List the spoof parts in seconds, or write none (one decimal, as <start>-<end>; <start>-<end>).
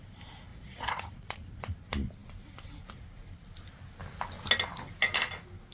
0.5-1.7